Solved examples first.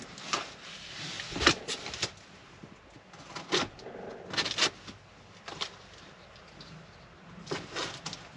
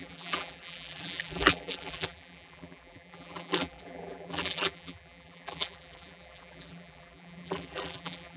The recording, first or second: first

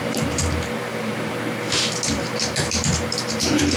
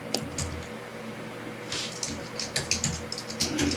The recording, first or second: second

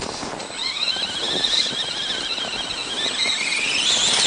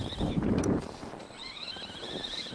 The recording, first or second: first